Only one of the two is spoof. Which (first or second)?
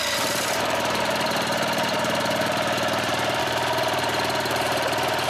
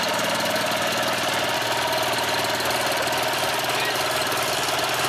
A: first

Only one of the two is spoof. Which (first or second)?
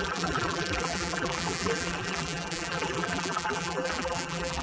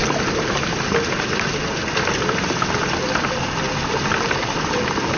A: first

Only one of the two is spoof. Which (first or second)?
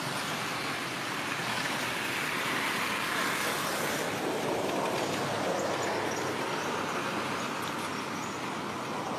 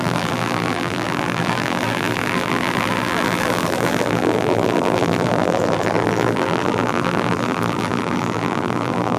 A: second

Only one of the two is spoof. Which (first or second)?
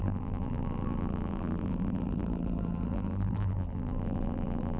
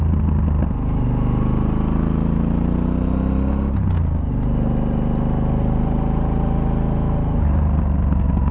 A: first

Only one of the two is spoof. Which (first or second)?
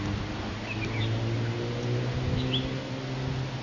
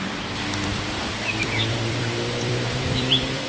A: second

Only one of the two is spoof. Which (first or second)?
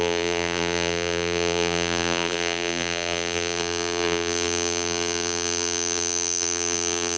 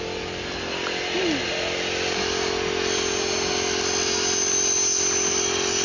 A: first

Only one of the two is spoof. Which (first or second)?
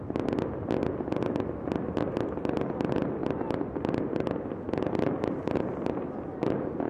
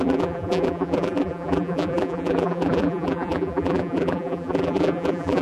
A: second